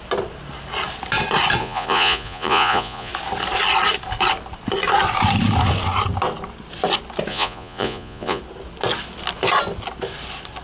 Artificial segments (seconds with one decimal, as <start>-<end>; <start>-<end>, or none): 1.6-3.1; 7.3-8.4